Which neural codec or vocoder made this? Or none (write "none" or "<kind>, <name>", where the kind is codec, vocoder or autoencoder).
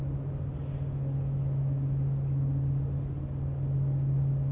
none